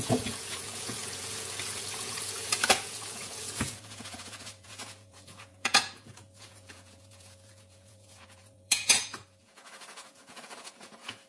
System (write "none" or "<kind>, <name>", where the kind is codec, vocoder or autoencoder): vocoder, Vocos